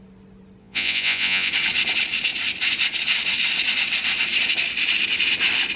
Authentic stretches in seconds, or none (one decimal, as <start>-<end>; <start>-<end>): 0.0-0.6; 1.5-5.8